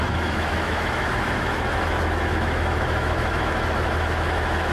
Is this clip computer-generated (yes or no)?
yes